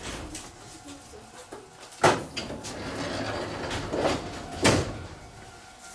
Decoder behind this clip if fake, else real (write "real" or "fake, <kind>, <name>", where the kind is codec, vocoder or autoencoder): real